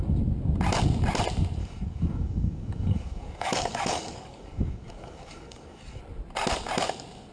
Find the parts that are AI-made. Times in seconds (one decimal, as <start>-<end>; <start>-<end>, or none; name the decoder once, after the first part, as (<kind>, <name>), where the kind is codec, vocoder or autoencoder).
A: 1.6-6.0 (codec, DAC)